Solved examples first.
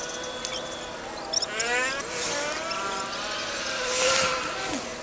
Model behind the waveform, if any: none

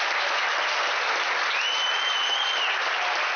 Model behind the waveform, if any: none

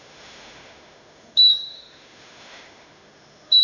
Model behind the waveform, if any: autoencoder, DAC-VAE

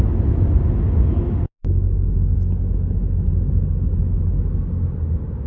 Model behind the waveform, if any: none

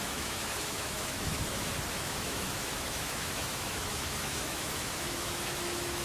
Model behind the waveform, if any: autoencoder, DAC-VAE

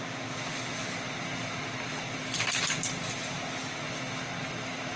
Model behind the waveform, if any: none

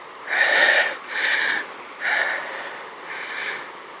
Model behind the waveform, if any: vocoder, BigVGAN v2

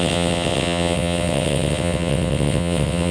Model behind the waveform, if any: vocoder, WaveNeXt